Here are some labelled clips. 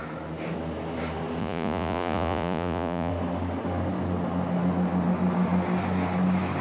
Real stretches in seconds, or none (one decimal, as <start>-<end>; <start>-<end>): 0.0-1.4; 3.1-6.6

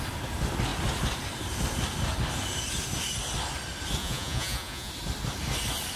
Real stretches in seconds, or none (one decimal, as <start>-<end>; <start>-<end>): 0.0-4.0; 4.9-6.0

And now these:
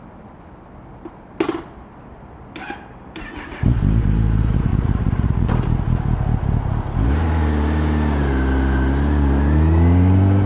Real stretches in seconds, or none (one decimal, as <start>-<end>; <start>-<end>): 0.0-4.7; 5.5-10.4

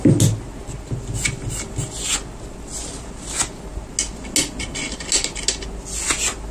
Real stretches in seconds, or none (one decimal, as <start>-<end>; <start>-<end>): 0.0-6.5

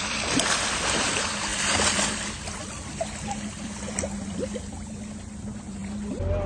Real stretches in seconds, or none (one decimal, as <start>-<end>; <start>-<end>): 0.0-6.5

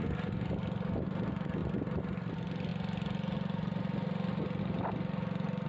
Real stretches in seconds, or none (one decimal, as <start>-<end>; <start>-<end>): 0.0-5.7

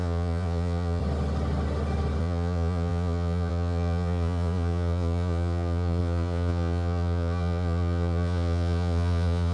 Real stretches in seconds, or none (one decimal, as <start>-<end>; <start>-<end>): 1.0-2.2